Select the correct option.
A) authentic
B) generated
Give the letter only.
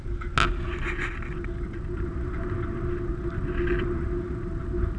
A